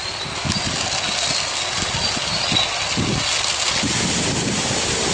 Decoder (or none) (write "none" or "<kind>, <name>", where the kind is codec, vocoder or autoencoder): none